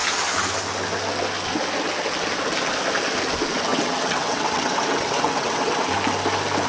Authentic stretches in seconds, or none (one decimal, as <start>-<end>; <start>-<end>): 0.0-3.7; 5.8-6.7

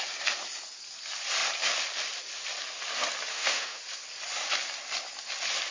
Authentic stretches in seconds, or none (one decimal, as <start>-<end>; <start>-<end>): 0.0-3.3; 3.8-5.7

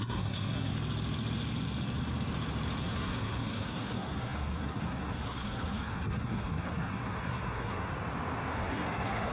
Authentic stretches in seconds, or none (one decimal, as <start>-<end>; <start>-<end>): 0.7-2.8; 7.9-8.5

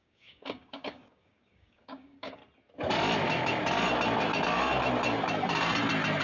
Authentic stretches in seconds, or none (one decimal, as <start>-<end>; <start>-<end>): 2.4-6.2

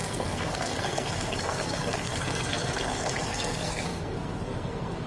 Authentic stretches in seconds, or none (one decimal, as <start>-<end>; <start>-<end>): none

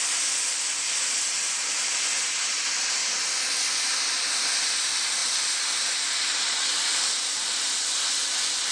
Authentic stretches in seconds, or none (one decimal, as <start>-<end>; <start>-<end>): 0.0-8.7

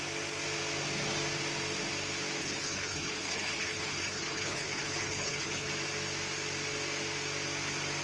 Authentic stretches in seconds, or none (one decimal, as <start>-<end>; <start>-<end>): 0.0-2.4; 5.7-8.0